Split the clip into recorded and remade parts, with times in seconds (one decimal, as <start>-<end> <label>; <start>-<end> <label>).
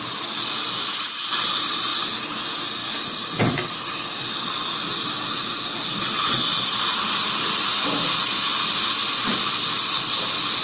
0.0-10.6 recorded